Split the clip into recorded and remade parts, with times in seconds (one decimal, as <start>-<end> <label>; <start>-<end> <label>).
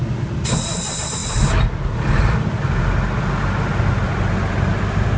0.0-5.2 recorded